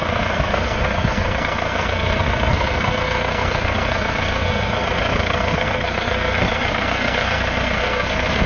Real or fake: fake